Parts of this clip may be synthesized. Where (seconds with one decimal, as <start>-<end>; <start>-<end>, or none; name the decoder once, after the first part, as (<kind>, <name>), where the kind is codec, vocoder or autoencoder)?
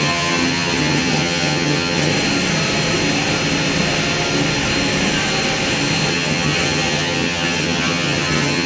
0.0-2.1 (vocoder, HiFi-GAN); 6.1-8.7